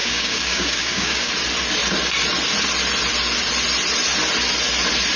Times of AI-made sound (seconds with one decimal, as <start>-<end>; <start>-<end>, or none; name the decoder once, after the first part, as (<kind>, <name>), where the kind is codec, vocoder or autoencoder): 0.0-1.3 (codec, DAC)